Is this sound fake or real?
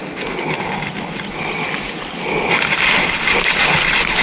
real